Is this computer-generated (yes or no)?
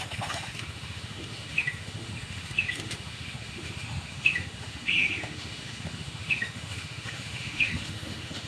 yes